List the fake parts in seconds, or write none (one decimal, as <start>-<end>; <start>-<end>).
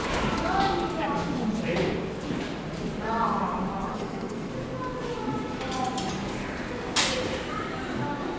3.9-4.5